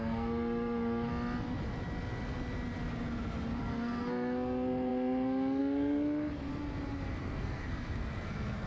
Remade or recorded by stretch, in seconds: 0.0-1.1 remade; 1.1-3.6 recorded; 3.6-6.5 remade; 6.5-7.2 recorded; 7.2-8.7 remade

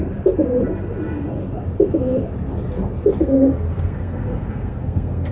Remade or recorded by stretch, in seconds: 0.0-3.2 recorded; 3.2-5.3 remade

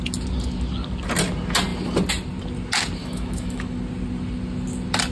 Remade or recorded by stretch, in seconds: 0.0-3.0 recorded; 3.0-3.8 remade; 3.8-5.1 recorded

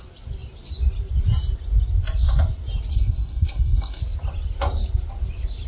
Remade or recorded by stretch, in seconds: 0.0-2.9 recorded; 2.9-4.0 remade; 4.0-5.7 recorded

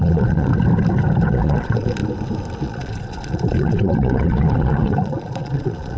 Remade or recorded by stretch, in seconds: 0.0-0.5 remade; 0.5-1.3 recorded; 1.3-2.0 remade; 2.0-2.6 recorded; 2.6-6.0 remade